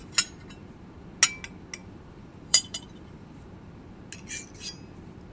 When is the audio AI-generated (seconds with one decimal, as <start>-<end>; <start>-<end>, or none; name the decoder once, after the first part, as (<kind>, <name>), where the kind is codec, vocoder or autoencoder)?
1.8-3.5 (vocoder, BigVGAN v2)